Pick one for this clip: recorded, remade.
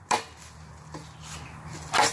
recorded